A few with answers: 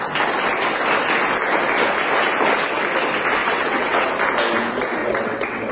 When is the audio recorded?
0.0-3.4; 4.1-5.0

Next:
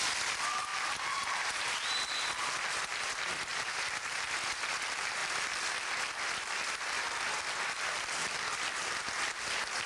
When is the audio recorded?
0.0-3.5; 4.1-9.9

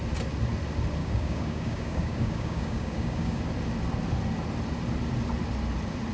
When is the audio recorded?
0.0-1.0; 3.4-6.1

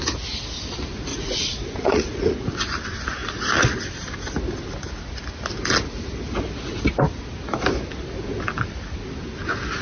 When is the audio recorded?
0.0-1.1; 2.4-9.8

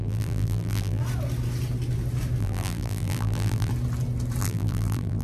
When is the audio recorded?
1.0-2.4; 3.7-4.4